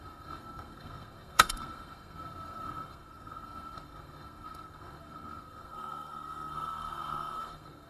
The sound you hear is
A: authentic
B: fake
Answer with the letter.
B